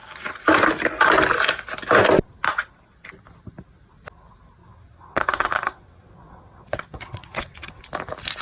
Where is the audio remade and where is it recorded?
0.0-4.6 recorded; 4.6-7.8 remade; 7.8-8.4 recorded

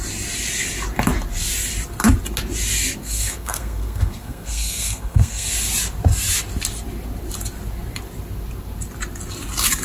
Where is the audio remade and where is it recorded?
0.0-3.0 recorded; 3.0-5.5 remade; 5.5-9.8 recorded